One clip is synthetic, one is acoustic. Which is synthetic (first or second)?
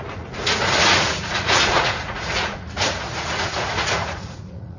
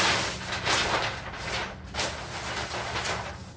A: first